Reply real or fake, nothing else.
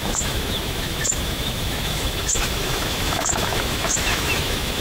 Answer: fake